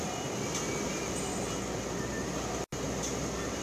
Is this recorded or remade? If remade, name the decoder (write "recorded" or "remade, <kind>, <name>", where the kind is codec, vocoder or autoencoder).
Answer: recorded